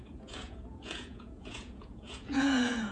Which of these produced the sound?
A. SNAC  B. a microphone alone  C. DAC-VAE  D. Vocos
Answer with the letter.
D